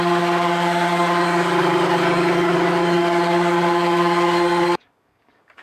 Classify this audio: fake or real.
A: fake